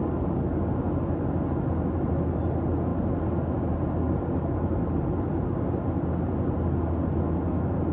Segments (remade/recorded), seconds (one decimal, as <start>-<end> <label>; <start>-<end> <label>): 0.0-0.7 remade; 0.7-7.9 recorded